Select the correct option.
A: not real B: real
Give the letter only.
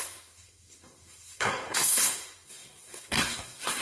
A